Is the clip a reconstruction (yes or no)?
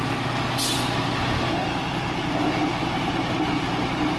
no